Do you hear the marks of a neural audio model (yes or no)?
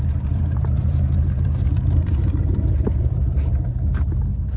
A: yes